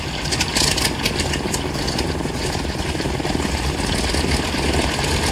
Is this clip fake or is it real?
real